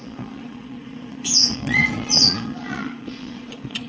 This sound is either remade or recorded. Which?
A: remade